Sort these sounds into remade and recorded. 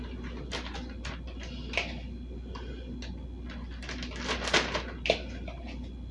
recorded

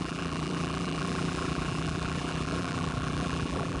remade